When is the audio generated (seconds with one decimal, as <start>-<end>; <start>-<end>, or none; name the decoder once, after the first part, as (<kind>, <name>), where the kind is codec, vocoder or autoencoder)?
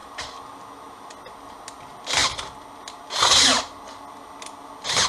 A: none